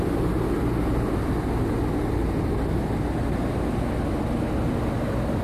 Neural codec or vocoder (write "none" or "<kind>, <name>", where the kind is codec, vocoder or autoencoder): none